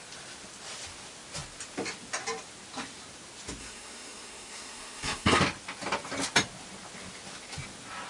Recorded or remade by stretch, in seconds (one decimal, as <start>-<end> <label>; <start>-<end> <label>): 0.0-3.6 recorded; 3.6-5.4 remade; 5.4-8.1 recorded